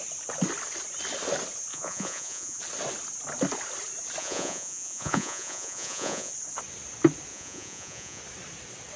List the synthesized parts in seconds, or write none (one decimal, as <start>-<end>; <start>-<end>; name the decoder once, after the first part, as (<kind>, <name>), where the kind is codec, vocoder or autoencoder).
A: 1.7-2.6 (vocoder, Vocos); 4.2-6.3; 7.3-8.2